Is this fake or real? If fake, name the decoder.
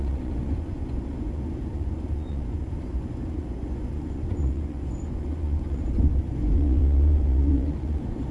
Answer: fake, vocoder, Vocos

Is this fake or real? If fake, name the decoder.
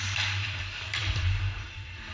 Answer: fake, vocoder, BigVGAN v2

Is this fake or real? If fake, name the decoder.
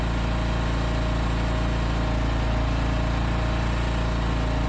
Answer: real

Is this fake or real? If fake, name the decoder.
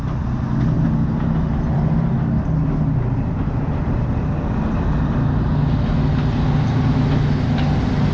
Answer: real